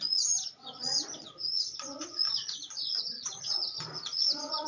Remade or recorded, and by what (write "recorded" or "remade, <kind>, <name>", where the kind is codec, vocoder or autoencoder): remade, vocoder, Vocos